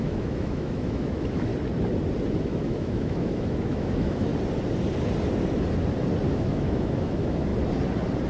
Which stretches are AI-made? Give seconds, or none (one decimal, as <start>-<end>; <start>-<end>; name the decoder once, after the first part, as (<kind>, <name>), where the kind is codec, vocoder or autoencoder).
0.0-1.5 (autoencoder, DAC-VAE); 2.4-4.3; 6.3-7.5